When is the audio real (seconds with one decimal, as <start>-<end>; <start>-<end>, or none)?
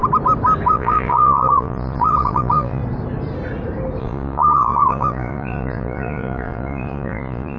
0.0-0.7; 2.8-4.0